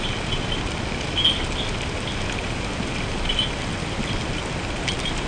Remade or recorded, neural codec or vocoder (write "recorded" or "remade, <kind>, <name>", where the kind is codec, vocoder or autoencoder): recorded